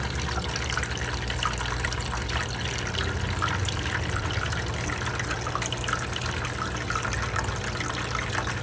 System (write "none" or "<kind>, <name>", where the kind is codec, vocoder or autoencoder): none